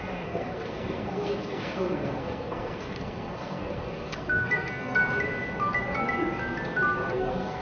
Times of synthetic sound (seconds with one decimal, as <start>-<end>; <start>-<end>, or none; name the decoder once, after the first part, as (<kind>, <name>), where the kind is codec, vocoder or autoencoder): 0.0-5.0 (codec, SNAC); 7.1-7.6